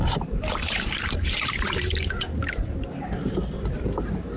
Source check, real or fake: fake